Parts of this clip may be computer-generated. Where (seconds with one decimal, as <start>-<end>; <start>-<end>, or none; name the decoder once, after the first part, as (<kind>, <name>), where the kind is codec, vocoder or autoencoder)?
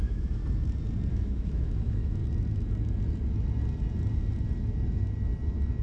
0.0-0.4 (autoencoder, DAC-VAE); 1.1-2.2